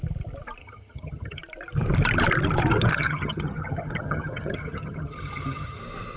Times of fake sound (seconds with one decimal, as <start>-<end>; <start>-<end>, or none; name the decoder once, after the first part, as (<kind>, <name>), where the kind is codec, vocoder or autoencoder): 0.6-1.4 (vocoder, HiFi-GAN); 2.9-5.8